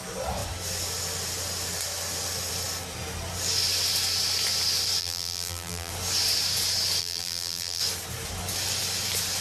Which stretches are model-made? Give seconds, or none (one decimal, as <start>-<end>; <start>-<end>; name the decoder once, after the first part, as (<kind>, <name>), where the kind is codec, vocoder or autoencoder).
5.0-5.9 (vocoder, BigVGAN v2); 7.0-7.8